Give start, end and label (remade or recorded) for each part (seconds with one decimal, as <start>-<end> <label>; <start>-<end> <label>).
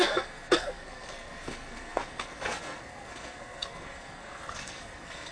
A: 0.0-5.3 remade